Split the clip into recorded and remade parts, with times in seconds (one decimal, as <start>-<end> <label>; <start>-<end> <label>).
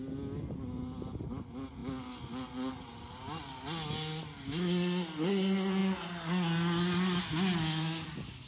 0.0-8.5 recorded